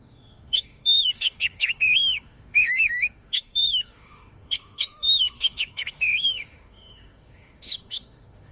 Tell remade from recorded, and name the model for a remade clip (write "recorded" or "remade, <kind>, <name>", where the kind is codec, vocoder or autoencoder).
remade, autoencoder, DAC-VAE